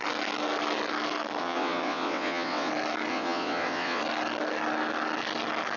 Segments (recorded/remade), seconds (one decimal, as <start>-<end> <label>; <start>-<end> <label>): 0.0-1.4 recorded; 1.4-2.7 remade; 2.7-3.1 recorded; 3.1-4.0 remade; 4.0-5.8 recorded